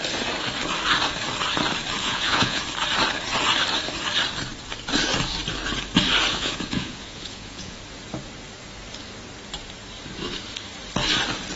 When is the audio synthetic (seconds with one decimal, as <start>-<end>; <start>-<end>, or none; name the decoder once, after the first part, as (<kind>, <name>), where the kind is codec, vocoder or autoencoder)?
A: 2.0-2.6 (vocoder, Vocos); 6.3-7.8